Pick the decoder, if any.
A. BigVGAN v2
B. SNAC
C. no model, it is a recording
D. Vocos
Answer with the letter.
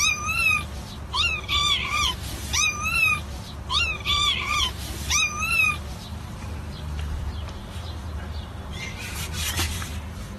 A